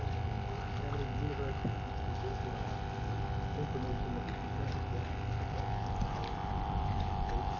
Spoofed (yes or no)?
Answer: no